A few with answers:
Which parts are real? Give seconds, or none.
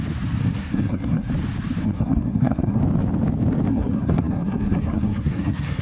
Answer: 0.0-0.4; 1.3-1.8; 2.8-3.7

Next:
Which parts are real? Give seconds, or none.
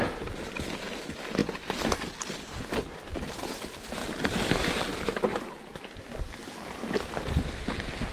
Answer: 0.0-8.1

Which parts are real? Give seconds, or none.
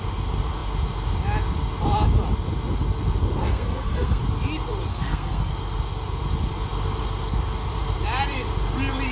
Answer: 0.0-3.4; 4.2-4.9; 5.5-9.1